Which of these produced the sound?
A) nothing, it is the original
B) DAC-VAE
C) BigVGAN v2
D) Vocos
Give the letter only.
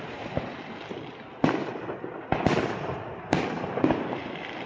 A